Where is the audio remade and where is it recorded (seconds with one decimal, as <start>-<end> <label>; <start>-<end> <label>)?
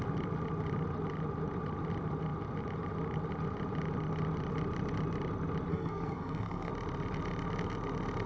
0.0-5.7 recorded; 5.7-6.7 remade; 6.7-8.3 recorded